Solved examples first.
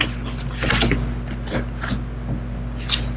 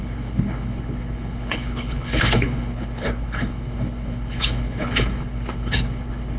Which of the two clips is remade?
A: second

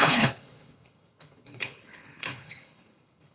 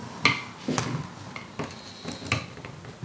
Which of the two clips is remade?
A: first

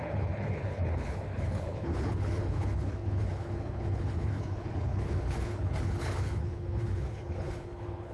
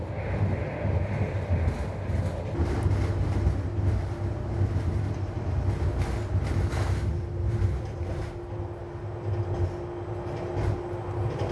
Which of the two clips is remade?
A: first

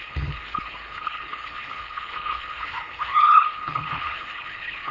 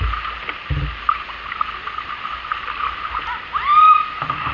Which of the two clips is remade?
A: first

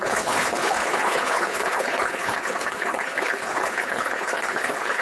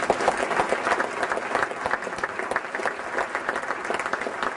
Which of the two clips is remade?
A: first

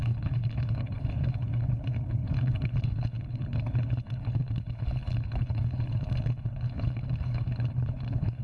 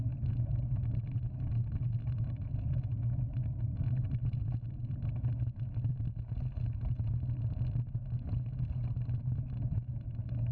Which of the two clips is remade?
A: first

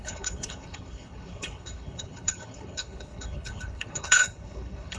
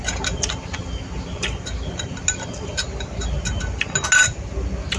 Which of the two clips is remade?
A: first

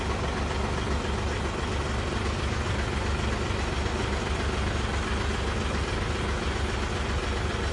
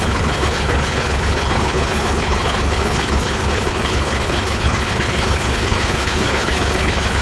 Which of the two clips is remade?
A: second